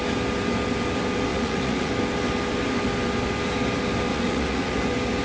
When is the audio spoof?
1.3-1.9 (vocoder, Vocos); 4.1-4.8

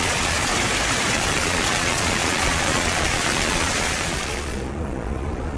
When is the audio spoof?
0.0-0.5 (vocoder, Vocos); 1.1-5.6

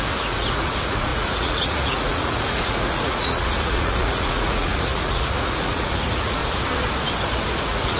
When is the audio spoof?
0.0-6.4 (vocoder, Vocos); 7.6-8.0

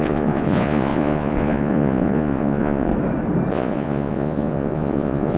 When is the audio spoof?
0.0-2.9 (vocoder, Vocos); 3.5-5.4

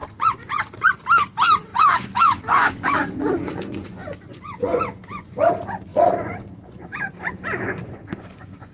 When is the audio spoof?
0.0-0.9 (vocoder, Vocos); 1.7-5.5; 5.9-8.7

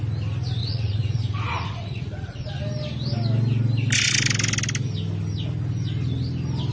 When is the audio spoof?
0.6-2.5 (vocoder, Vocos)

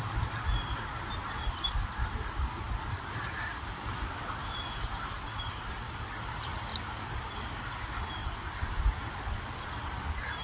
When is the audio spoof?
none